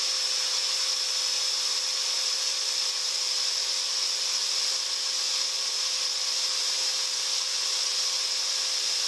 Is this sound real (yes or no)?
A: yes